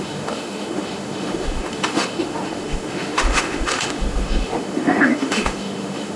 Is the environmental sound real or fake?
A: fake